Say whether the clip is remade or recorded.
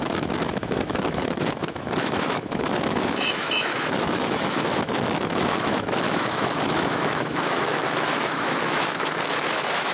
remade